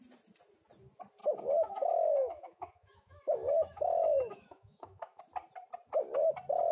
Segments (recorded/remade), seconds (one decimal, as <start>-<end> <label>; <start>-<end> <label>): 0.0-1.2 recorded; 1.2-5.2 remade; 5.2-6.7 recorded